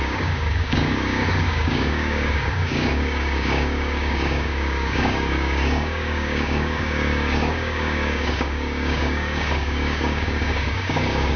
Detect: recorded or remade remade